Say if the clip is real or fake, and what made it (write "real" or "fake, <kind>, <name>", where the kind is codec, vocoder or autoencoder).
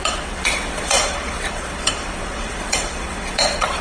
fake, vocoder, WaveNeXt